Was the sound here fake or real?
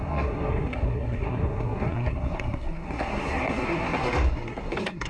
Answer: fake